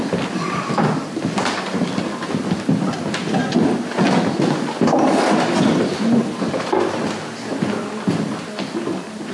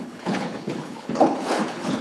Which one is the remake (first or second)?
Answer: second